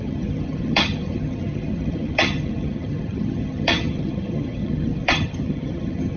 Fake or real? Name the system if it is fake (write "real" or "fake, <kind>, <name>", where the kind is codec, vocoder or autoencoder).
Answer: fake, vocoder, HiFi-GAN